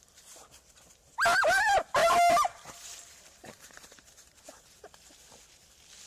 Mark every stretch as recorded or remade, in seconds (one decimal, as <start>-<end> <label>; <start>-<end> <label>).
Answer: 0.0-2.0 recorded; 2.0-4.8 remade; 4.8-6.1 recorded